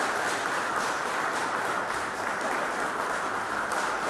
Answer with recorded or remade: recorded